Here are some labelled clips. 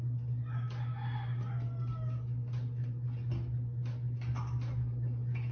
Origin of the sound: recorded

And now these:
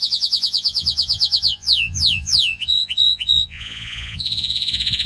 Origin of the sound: remade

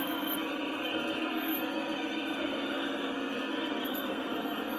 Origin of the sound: remade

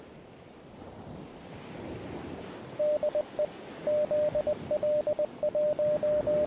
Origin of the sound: recorded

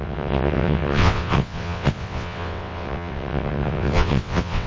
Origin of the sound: remade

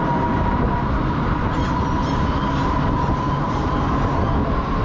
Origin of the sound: recorded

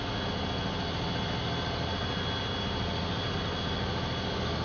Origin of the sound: recorded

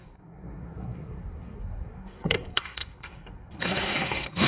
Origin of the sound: remade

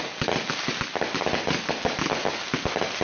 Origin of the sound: recorded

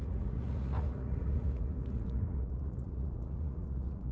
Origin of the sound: remade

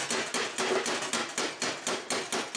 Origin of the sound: recorded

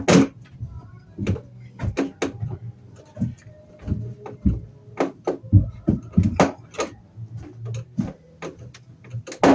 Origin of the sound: recorded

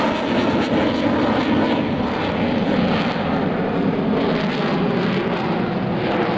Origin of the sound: recorded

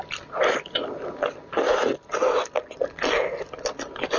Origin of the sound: recorded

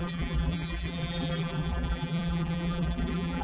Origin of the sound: remade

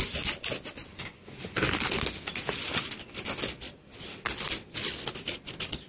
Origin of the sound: recorded